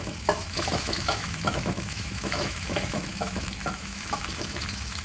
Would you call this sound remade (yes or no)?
yes